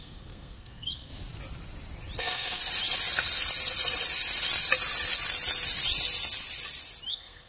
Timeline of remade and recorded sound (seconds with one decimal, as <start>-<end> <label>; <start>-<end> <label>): 0.0-1.1 remade; 1.1-2.2 recorded; 2.2-2.6 remade; 2.6-7.1 recorded; 7.1-7.5 remade